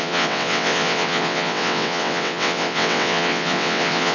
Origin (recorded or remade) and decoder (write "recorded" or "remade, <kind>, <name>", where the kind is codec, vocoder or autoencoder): remade, vocoder, WaveNeXt